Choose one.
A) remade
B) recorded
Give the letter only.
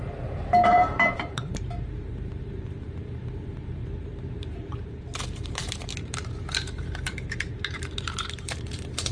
A